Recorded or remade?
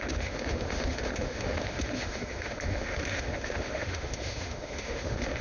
remade